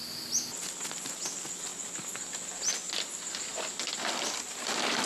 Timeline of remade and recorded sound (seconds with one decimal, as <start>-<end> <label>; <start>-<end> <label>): 0.0-5.1 recorded